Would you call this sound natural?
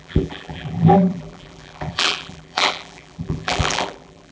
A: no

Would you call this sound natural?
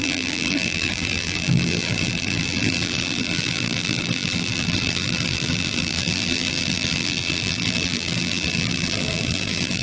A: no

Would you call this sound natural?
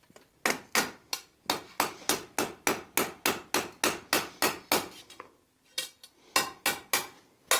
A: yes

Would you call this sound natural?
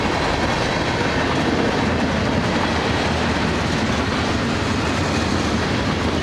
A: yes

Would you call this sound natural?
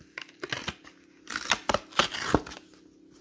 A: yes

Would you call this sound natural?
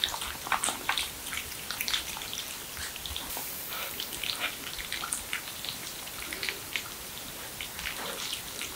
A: no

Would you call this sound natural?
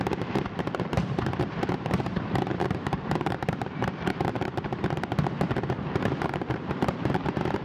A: no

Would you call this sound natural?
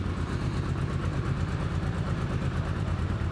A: no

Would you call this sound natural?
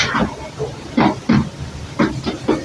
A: yes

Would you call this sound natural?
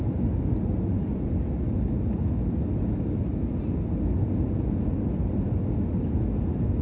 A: yes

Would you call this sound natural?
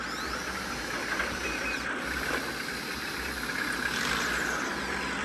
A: yes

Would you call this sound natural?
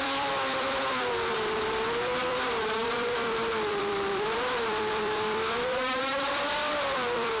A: no